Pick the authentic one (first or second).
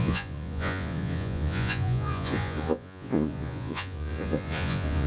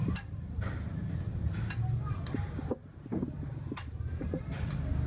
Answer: second